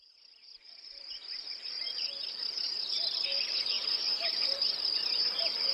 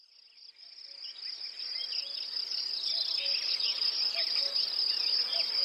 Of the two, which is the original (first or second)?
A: second